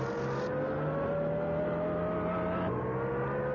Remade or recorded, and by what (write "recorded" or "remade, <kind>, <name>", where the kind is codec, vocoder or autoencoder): recorded